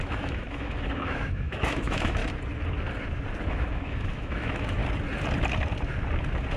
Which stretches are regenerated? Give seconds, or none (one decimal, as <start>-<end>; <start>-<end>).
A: 0.0-2.2; 3.5-4.8